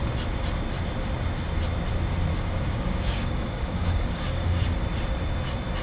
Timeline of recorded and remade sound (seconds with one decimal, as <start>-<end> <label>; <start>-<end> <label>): 0.0-2.3 recorded; 2.3-4.8 remade; 4.8-5.8 recorded

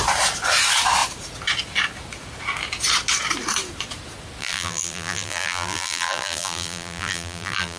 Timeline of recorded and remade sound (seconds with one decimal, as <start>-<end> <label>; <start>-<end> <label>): 0.0-4.4 recorded; 4.4-7.8 remade

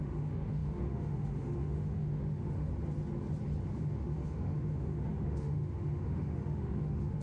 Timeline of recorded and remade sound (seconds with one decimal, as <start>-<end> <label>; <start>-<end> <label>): 0.0-2.7 remade; 2.7-3.7 recorded; 3.7-7.2 remade

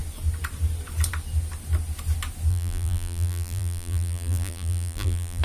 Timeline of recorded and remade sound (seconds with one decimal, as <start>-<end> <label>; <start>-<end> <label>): 0.0-2.5 recorded; 2.5-5.4 remade

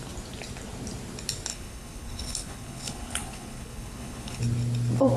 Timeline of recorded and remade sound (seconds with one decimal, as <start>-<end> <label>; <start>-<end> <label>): 0.0-1.5 recorded; 1.5-4.4 remade; 4.4-5.2 recorded